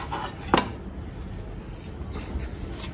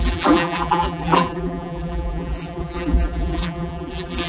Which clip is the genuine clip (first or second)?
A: first